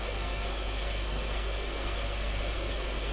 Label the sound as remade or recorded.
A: remade